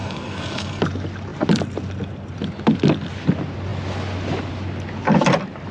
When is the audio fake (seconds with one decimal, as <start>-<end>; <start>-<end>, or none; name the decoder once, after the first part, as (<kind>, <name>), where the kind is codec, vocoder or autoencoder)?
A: 0.0-0.8 (codec, SNAC)